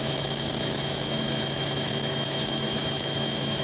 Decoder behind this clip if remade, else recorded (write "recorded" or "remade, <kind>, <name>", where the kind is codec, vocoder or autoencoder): remade, autoencoder, DAC-VAE